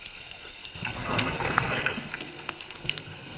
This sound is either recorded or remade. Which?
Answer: remade